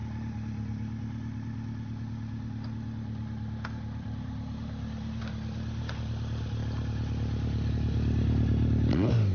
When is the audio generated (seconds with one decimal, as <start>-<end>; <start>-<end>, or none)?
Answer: none